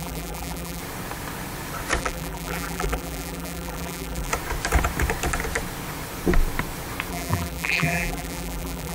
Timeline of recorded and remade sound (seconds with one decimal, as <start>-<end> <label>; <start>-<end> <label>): 0.0-0.8 remade; 0.8-2.0 recorded; 2.0-4.3 remade; 4.3-7.1 recorded; 7.1-8.9 remade

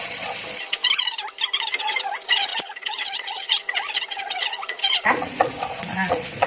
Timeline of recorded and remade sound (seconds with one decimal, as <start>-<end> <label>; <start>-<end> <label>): 0.0-0.8 remade; 0.8-1.8 recorded; 1.8-6.5 remade

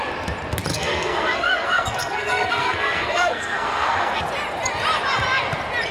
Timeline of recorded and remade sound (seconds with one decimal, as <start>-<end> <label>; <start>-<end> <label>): 0.0-0.7 recorded; 0.7-4.2 remade; 4.2-5.9 recorded

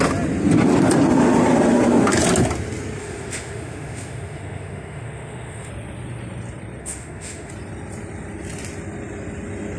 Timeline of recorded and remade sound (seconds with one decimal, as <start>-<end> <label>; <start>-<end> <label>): 0.0-3.0 recorded; 3.0-5.7 remade; 5.7-6.8 recorded; 6.8-7.5 remade; 7.5-9.8 recorded

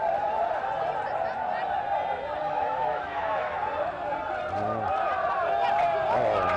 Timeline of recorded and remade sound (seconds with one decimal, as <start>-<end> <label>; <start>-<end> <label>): 0.0-2.4 recorded; 2.4-3.5 remade; 3.5-6.6 recorded